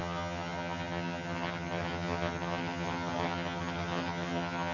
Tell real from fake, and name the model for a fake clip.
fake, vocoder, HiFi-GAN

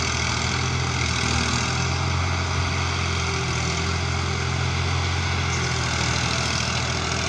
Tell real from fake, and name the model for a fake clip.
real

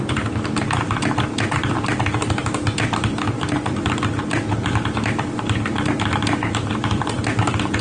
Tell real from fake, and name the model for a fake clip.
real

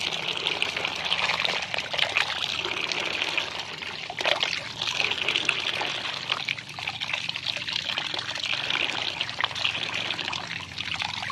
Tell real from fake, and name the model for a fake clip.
real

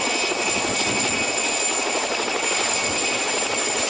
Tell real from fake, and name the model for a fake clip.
real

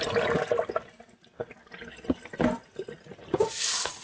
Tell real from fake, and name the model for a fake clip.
real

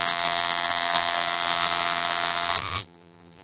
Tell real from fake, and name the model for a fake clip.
fake, vocoder, BigVGAN v2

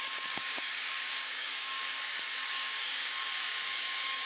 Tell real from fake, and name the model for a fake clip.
fake, codec, DAC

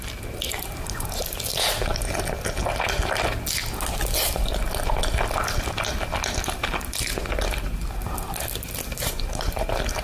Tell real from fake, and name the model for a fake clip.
real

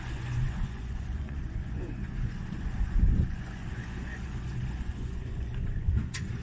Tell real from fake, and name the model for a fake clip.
fake, vocoder, Vocos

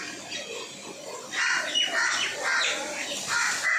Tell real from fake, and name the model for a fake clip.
real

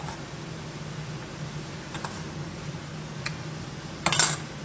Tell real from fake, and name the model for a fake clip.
real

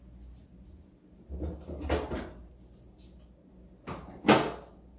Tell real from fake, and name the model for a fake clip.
real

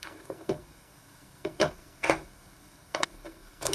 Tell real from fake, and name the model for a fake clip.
fake, codec, SNAC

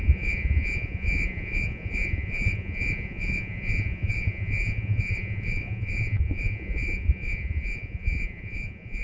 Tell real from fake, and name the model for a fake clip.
fake, vocoder, Vocos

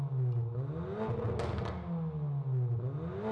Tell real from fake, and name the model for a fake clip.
real